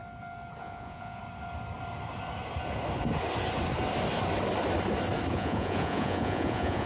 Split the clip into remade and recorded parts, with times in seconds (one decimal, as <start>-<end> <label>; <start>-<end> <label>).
0.0-0.6 recorded; 0.6-1.2 remade; 1.2-5.3 recorded; 5.3-6.9 remade